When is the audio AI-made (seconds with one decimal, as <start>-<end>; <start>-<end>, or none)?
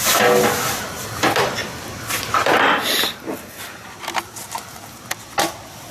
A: 1.6-3.3